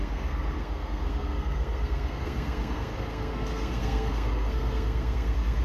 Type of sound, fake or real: fake